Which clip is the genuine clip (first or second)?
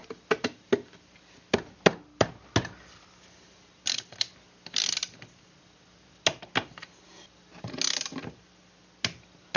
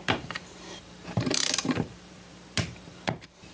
first